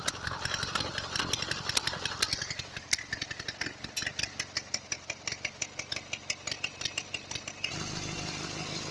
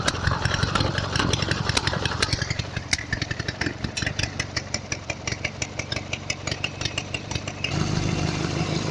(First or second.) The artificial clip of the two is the second